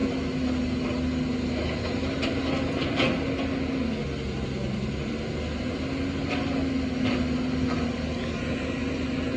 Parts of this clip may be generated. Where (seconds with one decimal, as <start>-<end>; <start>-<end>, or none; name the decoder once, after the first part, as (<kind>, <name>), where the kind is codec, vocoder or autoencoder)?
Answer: none